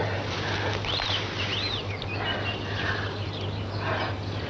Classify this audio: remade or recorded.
recorded